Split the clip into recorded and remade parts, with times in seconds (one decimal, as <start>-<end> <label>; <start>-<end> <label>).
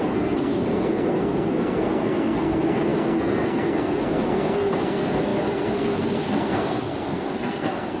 0.0-8.0 remade